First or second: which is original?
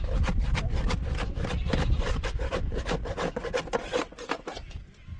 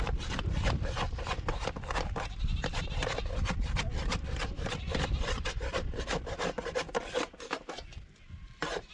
first